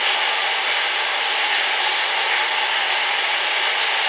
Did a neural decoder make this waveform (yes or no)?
no